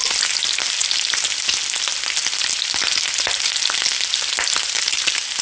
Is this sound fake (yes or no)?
no